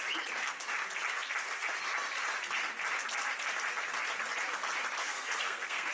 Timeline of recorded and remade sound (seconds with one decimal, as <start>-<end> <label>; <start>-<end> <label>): 0.0-5.0 recorded; 5.0-5.9 remade